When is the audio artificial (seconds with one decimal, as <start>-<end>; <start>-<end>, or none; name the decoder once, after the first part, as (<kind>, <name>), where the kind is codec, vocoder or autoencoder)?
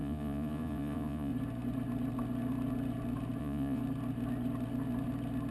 0.0-1.3 (vocoder, Vocos); 3.4-3.8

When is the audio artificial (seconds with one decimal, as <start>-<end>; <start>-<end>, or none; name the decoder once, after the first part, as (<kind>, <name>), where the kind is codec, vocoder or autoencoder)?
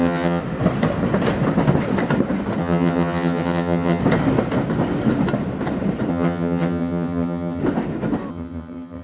0.0-0.4 (vocoder, HiFi-GAN); 2.6-4.0; 6.1-7.6; 8.3-9.0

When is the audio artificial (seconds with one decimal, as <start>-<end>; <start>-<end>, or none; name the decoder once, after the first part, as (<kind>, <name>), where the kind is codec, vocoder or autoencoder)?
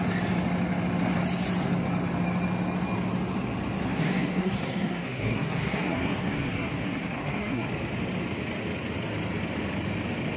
3.9-7.7 (codec, SNAC)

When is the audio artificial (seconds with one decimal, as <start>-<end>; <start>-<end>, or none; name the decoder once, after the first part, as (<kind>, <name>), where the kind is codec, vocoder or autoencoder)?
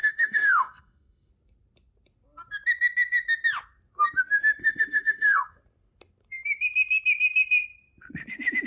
0.0-1.3 (codec, SNAC); 4.6-5.6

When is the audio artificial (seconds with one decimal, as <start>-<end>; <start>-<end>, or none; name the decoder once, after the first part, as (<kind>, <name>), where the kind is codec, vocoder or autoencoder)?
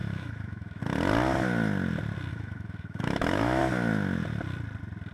0.0-0.8 (autoencoder, DAC-VAE); 2.3-3.6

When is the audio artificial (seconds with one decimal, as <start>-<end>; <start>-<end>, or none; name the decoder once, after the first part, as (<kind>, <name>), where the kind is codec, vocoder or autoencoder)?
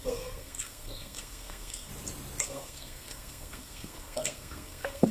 0.0-1.9 (codec, SNAC); 2.4-5.1